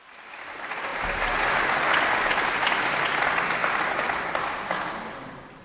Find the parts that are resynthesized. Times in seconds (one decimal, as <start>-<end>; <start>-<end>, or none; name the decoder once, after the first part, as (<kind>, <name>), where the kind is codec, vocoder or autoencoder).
0.0-0.9 (vocoder, BigVGAN v2); 3.0-3.6